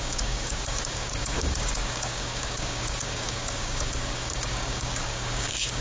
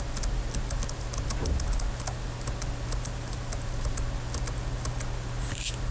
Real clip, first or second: second